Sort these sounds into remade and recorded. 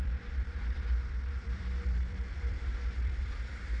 remade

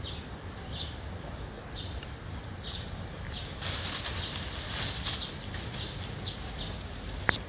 recorded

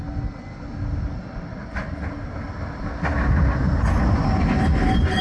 recorded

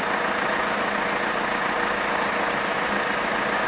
recorded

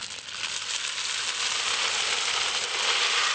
recorded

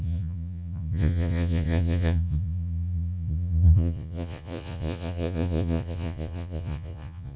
remade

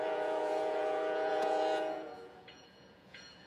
remade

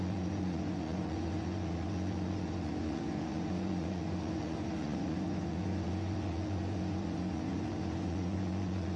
remade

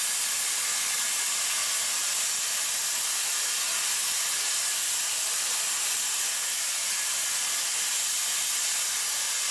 recorded